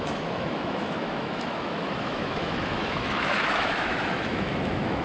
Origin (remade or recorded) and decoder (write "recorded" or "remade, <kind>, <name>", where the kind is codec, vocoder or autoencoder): remade, autoencoder, DAC-VAE